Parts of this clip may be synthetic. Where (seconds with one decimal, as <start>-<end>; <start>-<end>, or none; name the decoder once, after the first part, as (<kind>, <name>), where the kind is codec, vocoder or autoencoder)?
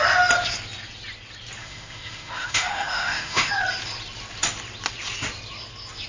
1.6-3.5 (autoencoder, DAC-VAE)